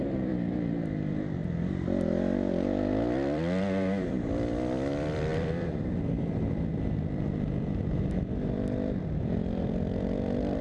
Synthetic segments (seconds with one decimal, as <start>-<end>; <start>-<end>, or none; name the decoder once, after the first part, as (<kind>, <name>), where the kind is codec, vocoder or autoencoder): 0.0-10.6 (vocoder, BigVGAN v2)